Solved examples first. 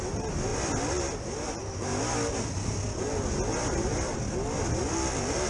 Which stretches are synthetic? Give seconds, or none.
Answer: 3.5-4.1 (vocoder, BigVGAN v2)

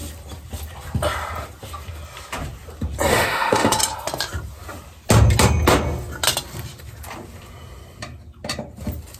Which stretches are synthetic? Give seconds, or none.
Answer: 3.1-3.8 (autoencoder, DAC-VAE)

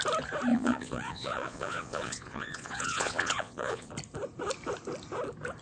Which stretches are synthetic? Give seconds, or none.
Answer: 0.5-3.9 (vocoder, Vocos)